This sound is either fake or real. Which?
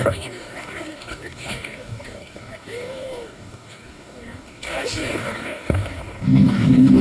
fake